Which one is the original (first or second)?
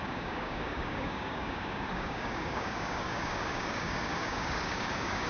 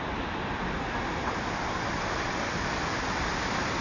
second